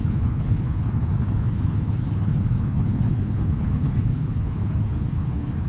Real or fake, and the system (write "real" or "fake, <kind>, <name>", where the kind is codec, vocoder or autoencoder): fake, codec, HILCodec